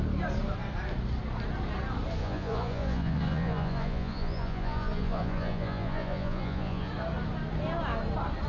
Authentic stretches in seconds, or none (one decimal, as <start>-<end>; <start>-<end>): 0.0-2.2; 6.9-8.5